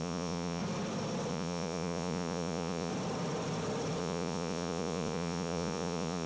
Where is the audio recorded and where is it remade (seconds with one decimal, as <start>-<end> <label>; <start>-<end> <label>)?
0.0-0.6 remade; 0.6-1.3 recorded; 1.3-2.9 remade; 2.9-4.0 recorded; 4.0-6.3 remade